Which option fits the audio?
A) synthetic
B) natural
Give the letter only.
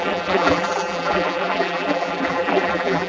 A